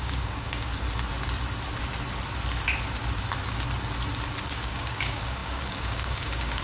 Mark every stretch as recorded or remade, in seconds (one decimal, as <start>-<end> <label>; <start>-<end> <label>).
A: 0.0-0.7 remade; 0.7-4.5 recorded; 4.5-6.6 remade